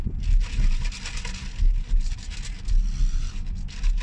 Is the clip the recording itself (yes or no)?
yes